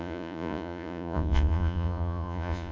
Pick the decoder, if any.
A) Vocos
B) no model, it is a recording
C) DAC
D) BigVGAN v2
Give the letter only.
A